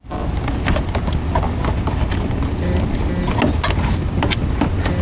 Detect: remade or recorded recorded